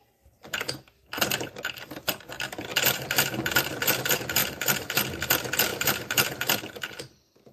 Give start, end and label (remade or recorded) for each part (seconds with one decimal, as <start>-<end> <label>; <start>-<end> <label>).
0.0-2.7 recorded; 2.7-3.6 remade; 3.6-4.4 recorded; 4.4-5.2 remade; 5.2-5.7 recorded; 5.7-6.6 remade; 6.6-7.5 recorded